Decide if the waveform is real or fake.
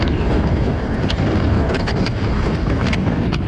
fake